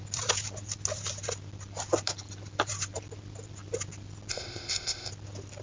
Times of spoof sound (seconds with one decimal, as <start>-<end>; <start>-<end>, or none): 4.3-5.1